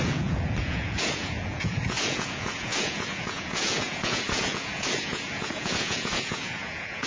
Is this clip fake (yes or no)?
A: yes